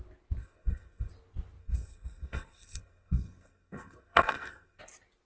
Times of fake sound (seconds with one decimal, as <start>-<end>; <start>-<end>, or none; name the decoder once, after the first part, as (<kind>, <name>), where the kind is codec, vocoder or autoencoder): 0.4-1.1 (codec, SNAC); 1.6-4.8